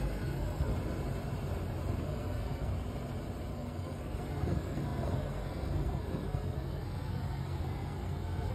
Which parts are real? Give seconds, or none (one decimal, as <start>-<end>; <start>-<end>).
0.7-2.0; 2.7-3.5